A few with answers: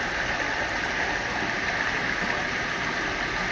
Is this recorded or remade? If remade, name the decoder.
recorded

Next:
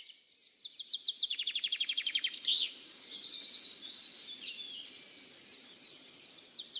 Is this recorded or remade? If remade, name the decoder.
remade, vocoder, BigVGAN v2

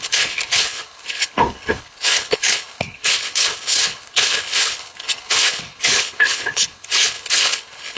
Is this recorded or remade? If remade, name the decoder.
remade, codec, HILCodec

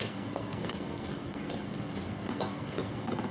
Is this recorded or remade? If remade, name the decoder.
remade, codec, SNAC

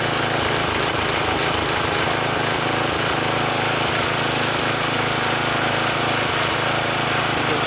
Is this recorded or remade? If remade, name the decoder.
recorded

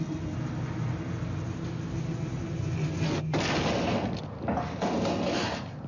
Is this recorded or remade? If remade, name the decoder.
recorded